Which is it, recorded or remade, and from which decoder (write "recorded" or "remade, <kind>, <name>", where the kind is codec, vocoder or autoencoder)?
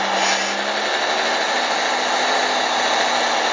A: recorded